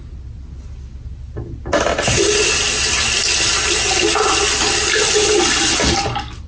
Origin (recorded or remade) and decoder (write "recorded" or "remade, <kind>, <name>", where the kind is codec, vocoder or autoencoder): recorded